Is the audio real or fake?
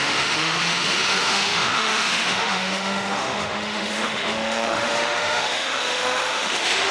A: fake